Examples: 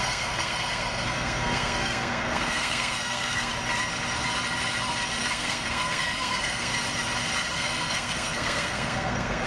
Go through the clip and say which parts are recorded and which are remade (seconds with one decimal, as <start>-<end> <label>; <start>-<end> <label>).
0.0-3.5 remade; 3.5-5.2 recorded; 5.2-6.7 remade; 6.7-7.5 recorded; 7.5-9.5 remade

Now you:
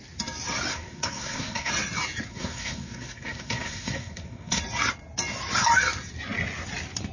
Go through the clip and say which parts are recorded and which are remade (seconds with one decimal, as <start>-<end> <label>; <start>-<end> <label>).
0.0-0.7 recorded; 0.7-1.7 remade; 1.7-2.3 recorded; 2.3-4.6 remade; 4.6-7.1 recorded

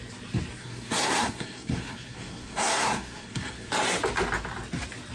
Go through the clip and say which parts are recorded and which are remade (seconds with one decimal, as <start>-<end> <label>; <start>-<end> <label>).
0.0-0.6 recorded; 0.6-3.7 remade; 3.7-5.1 recorded